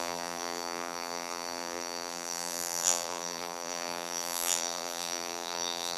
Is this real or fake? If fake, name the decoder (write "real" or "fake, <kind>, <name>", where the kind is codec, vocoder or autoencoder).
fake, vocoder, BigVGAN v2